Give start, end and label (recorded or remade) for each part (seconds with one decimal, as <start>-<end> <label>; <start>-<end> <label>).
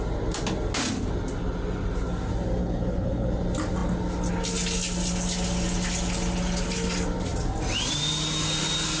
0.0-2.6 recorded; 2.6-3.3 remade; 3.3-9.0 recorded